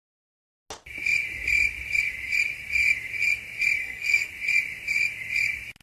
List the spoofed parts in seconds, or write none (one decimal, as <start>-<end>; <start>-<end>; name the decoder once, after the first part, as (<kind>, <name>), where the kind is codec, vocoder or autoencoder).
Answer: 3.8-4.3 (codec, SNAC)